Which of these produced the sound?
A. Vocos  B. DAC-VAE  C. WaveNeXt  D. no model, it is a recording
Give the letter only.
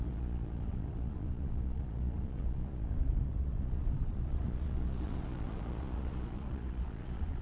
A